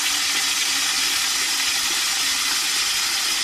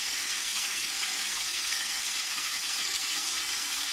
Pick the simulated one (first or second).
second